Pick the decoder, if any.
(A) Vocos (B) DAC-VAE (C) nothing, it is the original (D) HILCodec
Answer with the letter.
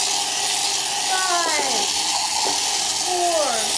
C